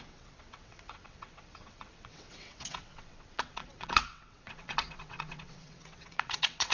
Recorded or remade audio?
remade